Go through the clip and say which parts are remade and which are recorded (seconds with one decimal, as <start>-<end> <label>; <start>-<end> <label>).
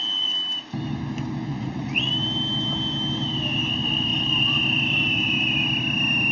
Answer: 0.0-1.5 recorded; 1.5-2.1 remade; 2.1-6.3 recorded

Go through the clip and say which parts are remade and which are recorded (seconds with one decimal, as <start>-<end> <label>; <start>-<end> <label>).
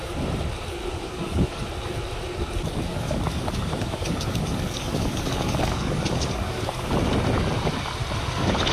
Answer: 0.0-0.9 recorded; 0.9-1.6 remade; 1.6-2.9 recorded; 2.9-6.9 remade; 6.9-8.7 recorded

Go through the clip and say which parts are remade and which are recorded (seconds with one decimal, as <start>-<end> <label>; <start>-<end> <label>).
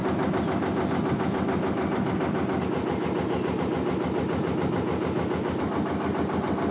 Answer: 0.0-6.7 recorded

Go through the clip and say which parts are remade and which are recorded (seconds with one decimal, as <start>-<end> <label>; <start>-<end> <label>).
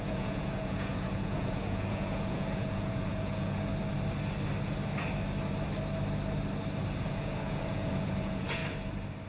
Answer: 0.0-3.7 remade; 3.7-7.0 recorded; 7.0-8.6 remade; 8.6-9.3 recorded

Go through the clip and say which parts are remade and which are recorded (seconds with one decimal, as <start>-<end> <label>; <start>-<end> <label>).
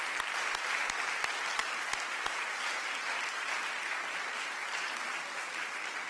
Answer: 0.0-6.1 recorded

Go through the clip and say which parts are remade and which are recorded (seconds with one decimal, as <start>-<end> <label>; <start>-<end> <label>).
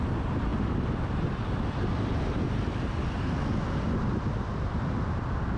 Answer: 0.0-5.6 recorded